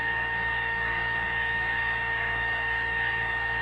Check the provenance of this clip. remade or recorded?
remade